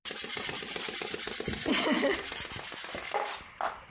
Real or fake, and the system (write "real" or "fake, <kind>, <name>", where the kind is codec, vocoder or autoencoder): real